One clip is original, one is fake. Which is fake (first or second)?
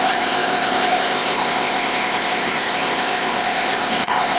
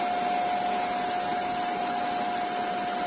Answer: first